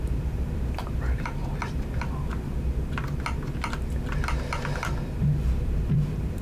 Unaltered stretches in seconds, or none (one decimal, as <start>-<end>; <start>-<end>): 1.4-5.2